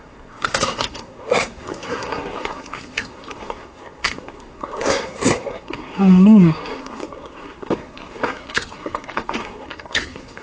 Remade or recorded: remade